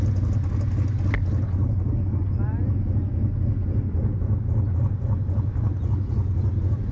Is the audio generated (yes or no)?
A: no